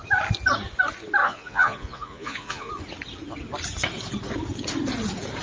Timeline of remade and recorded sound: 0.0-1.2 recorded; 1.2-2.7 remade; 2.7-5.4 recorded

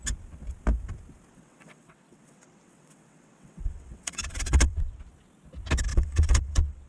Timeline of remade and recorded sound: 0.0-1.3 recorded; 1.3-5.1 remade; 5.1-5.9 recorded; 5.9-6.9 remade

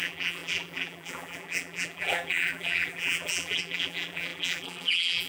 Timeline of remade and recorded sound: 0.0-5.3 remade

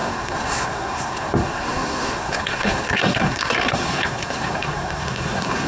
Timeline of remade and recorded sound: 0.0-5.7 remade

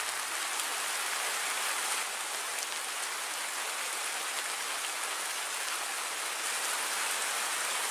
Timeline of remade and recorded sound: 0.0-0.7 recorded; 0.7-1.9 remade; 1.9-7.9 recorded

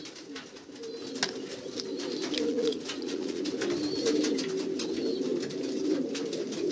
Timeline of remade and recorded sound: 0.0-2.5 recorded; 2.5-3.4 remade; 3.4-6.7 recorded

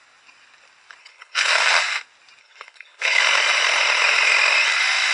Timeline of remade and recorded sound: 0.0-1.0 recorded; 1.0-1.5 remade; 1.5-2.4 recorded; 2.4-3.2 remade; 3.2-5.1 recorded

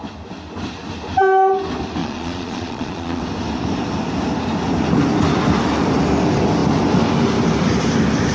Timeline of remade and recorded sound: 0.0-2.0 recorded; 2.0-3.2 remade; 3.2-8.3 recorded